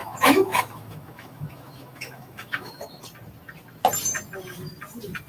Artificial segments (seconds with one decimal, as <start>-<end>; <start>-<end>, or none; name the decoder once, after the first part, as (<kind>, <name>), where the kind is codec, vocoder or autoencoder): 0.0-3.0 (autoencoder, DAC-VAE)